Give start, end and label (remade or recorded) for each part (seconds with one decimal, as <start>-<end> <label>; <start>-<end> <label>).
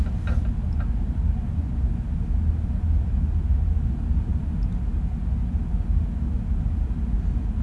0.0-7.6 recorded